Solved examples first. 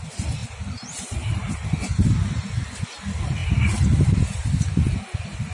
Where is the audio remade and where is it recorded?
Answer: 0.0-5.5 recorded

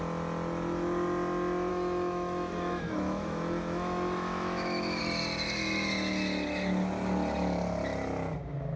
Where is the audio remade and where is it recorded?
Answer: 0.0-1.7 recorded; 1.7-5.0 remade; 5.0-8.8 recorded

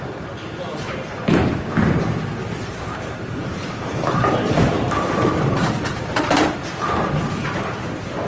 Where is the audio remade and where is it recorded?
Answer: 0.0-2.4 recorded; 2.4-6.5 remade; 6.5-8.3 recorded

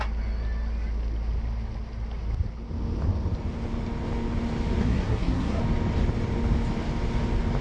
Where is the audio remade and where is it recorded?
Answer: 0.0-4.8 recorded; 4.8-5.6 remade; 5.6-7.6 recorded

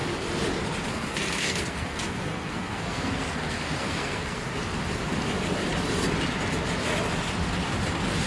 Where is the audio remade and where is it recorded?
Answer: 0.0-0.9 recorded; 0.9-4.5 remade; 4.5-8.3 recorded

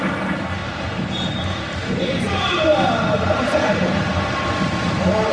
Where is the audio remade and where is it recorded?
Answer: 0.0-0.6 recorded; 0.6-2.2 remade; 2.2-2.7 recorded; 2.7-5.3 remade